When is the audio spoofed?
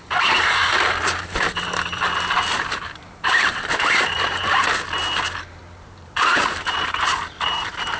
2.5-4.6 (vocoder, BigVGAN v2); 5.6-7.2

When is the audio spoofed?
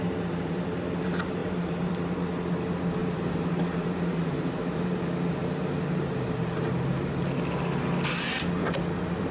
1.4-1.9 (vocoder, BigVGAN v2); 3.0-5.0; 5.4-7.1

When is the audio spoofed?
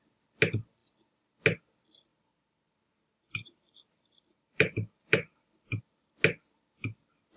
2.1-5.8 (vocoder, BigVGAN v2)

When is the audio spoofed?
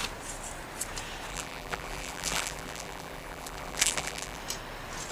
1.3-4.4 (vocoder, BigVGAN v2)